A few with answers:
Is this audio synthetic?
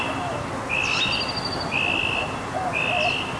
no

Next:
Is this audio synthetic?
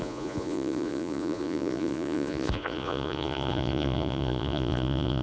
yes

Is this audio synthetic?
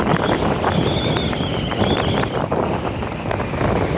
no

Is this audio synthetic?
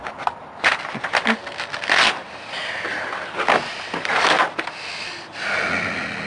no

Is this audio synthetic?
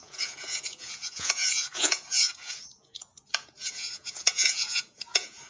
yes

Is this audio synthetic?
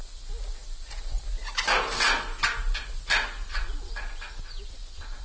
no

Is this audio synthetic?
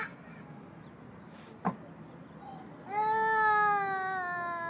no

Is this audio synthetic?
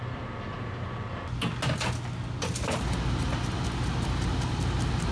no